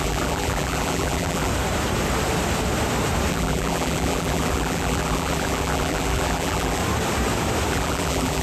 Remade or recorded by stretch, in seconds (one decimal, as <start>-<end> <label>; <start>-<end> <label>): 0.0-1.5 remade; 1.5-3.3 recorded; 3.3-6.8 remade; 6.8-7.7 recorded; 7.7-8.4 remade